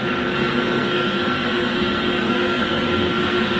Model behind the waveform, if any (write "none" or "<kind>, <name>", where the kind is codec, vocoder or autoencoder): codec, SNAC